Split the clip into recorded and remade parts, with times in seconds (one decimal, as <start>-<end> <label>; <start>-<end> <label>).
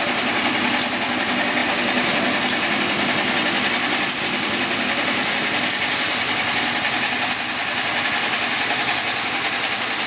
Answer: 0.0-10.1 recorded